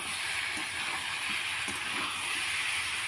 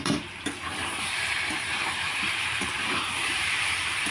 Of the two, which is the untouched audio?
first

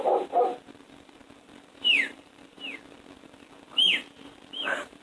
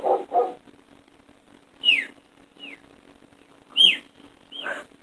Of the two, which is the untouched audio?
second